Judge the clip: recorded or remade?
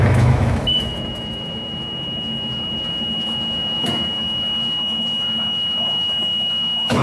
remade